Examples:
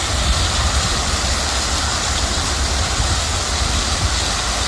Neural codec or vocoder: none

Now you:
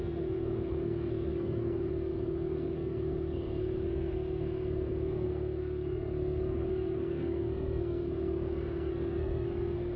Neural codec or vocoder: codec, SNAC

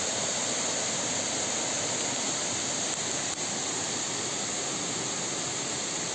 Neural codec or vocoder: none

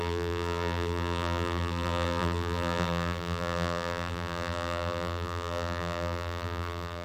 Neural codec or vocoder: vocoder, BigVGAN v2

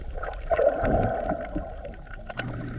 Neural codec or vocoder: none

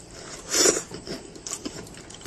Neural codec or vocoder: vocoder, BigVGAN v2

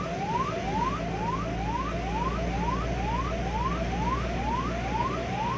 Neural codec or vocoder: none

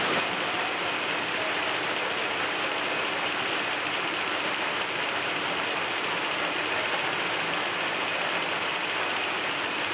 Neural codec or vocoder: vocoder, BigVGAN v2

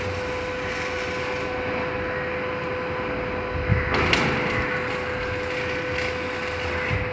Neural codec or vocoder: none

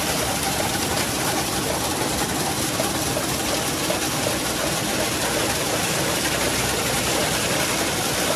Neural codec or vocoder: vocoder, BigVGAN v2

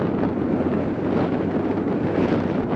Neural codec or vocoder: vocoder, BigVGAN v2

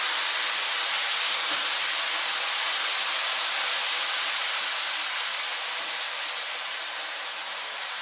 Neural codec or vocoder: none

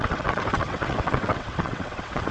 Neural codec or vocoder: vocoder, WaveNeXt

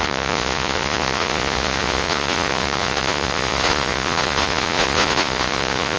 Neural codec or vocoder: vocoder, Vocos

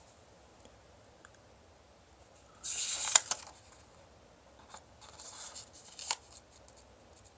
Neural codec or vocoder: none